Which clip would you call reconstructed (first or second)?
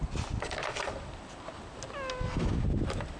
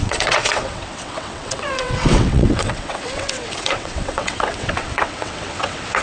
second